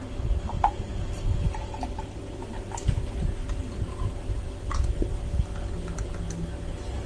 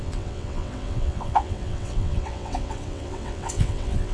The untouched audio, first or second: first